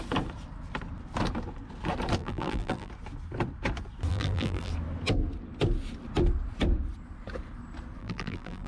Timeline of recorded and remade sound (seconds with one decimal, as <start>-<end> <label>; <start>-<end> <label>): 0.0-2.2 recorded; 2.2-2.9 remade; 2.9-4.1 recorded; 4.1-4.7 remade; 4.7-8.0 recorded; 8.0-8.7 remade